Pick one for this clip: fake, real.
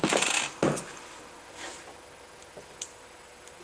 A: real